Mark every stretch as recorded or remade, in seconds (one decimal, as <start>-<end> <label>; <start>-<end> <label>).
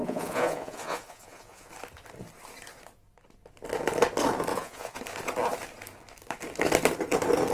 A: 0.0-1.7 remade; 1.7-4.5 recorded; 4.5-5.0 remade; 5.0-7.5 recorded